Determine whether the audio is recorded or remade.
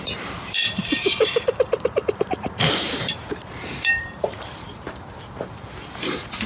remade